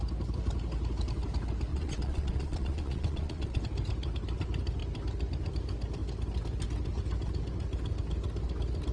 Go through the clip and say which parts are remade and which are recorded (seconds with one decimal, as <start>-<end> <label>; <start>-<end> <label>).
0.0-1.7 recorded; 1.7-3.6 remade; 3.6-8.9 recorded